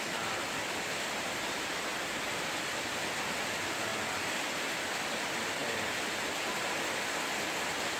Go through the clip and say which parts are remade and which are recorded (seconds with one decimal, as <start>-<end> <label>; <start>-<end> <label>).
0.0-8.0 recorded